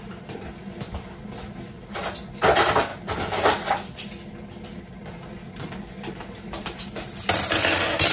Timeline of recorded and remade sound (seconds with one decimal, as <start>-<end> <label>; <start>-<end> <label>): 0.0-8.1 recorded